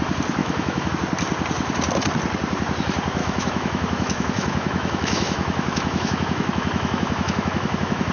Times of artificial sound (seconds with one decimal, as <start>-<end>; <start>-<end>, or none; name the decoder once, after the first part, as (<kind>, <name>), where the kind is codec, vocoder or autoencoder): 0.4-0.9 (autoencoder, DAC-VAE); 3.2-8.1

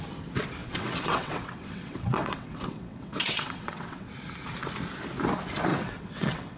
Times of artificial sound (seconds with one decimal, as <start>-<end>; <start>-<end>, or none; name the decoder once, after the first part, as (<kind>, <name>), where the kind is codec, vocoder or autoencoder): 0.6-4.1 (vocoder, WaveNeXt); 5.7-6.6

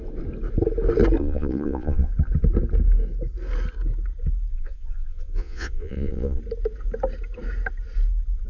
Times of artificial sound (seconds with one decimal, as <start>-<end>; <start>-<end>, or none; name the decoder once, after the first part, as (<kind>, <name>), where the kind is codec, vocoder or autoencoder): 1.2-2.1 (vocoder, Vocos); 4.5-6.4

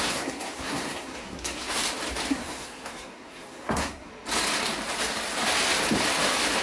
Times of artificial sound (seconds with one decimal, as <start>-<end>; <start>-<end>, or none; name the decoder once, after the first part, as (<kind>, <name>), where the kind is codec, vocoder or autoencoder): 0.0-1.8 (codec, SNAC); 2.3-4.1

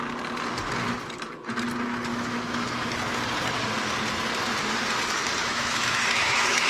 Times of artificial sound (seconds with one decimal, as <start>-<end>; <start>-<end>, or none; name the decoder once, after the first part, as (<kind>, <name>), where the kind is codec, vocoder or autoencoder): 2.1-2.9 (autoencoder, DAC-VAE); 5.4-6.7

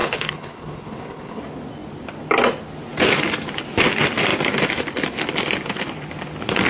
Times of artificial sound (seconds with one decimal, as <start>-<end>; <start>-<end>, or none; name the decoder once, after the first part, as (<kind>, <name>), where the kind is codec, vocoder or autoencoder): 0.0-1.4 (codec, HILCodec)